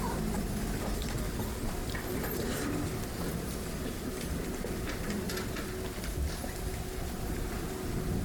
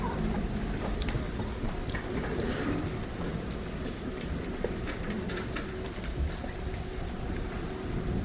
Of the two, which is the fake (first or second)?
second